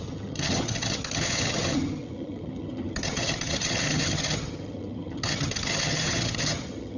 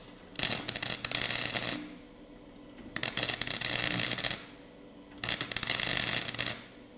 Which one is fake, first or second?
first